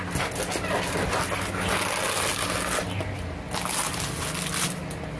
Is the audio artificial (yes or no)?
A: no